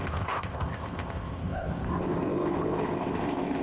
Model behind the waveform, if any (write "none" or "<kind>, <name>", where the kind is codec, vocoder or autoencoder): codec, ZipCodec